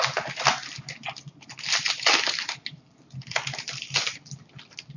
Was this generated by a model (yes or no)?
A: no